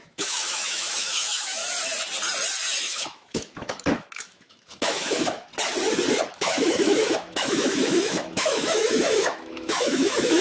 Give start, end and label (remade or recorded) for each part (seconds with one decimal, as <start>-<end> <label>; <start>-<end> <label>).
0.0-1.6 remade; 1.6-2.8 recorded; 2.8-5.5 remade; 5.5-6.3 recorded; 6.3-10.4 remade